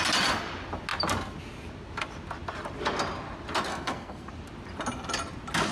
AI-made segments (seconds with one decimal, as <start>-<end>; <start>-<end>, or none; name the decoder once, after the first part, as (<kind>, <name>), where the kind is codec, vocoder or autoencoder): 3.7-4.3 (codec, SNAC)